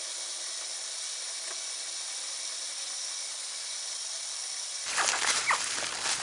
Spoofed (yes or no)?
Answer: no